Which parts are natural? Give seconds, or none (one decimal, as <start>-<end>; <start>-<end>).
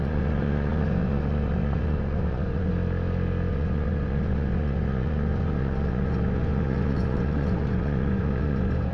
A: 2.7-3.5